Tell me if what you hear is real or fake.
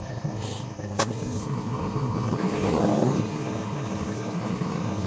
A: fake